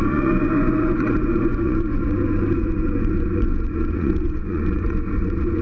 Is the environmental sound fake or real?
fake